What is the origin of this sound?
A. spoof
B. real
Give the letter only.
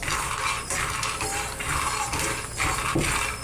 B